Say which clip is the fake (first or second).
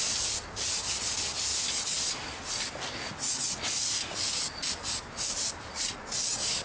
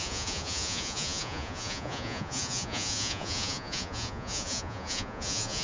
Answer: second